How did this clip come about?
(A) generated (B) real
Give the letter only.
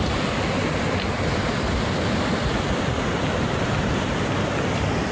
A